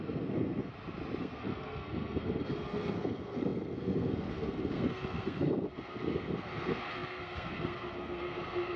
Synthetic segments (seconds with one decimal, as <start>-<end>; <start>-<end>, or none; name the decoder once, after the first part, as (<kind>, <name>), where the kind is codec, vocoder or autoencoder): 0.0-0.7 (codec, SNAC); 1.2-8.8